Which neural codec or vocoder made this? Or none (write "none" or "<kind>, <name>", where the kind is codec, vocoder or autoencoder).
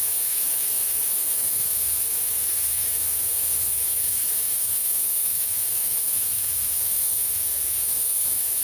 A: autoencoder, DAC-VAE